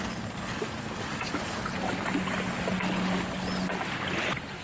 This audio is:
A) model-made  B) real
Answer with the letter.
B